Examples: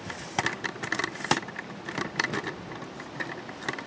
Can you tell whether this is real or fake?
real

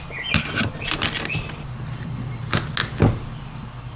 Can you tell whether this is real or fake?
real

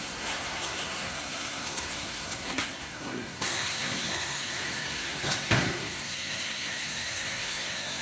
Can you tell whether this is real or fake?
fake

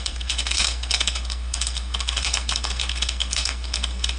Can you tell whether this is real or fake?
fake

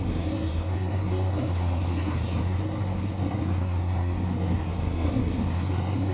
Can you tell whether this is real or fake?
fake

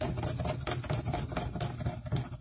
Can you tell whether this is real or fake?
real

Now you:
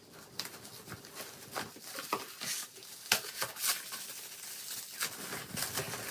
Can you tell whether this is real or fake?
real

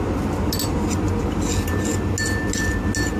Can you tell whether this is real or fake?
real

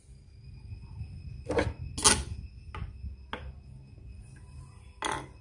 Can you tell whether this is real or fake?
real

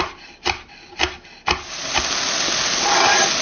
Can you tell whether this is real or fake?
real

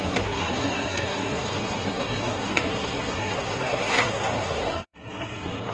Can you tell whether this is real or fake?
fake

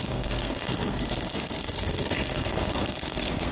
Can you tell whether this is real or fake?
fake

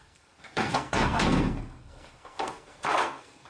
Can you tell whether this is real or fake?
fake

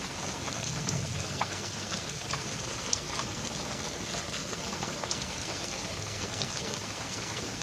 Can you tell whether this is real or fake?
fake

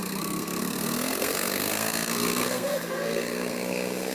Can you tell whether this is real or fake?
fake